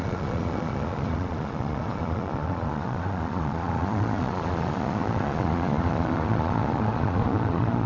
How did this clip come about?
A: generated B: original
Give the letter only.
A